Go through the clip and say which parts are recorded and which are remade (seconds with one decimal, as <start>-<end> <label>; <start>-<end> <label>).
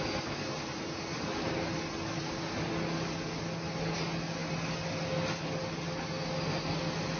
0.0-7.2 recorded